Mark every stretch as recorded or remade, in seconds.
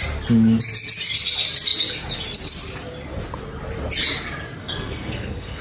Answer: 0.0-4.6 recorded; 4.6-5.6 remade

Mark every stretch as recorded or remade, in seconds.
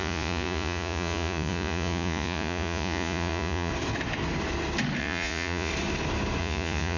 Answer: 0.0-3.7 remade; 3.7-5.0 recorded; 5.0-5.7 remade; 5.7-6.4 recorded; 6.4-7.0 remade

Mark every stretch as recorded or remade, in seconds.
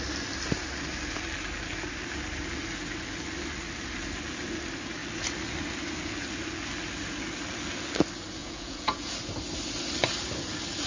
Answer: 0.0-8.4 recorded; 8.4-9.1 remade; 9.1-10.9 recorded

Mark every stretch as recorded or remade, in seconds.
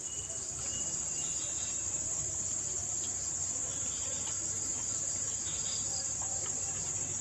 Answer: 0.0-3.0 remade; 3.0-3.4 recorded; 3.4-4.3 remade; 4.3-4.7 recorded; 4.7-7.2 remade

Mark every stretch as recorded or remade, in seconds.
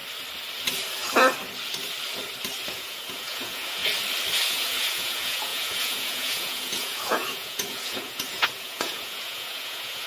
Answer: 0.0-2.7 recorded; 2.7-3.8 remade; 3.8-4.5 recorded; 4.5-10.1 remade